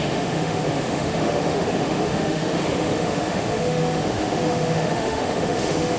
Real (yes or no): no